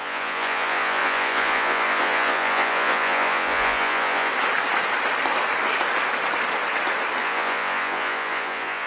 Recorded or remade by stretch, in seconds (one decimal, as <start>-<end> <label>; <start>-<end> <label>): 0.0-4.3 remade; 4.3-7.2 recorded; 7.2-8.9 remade